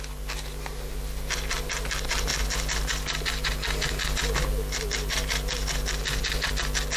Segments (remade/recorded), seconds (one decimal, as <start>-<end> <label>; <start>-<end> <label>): 0.0-7.0 recorded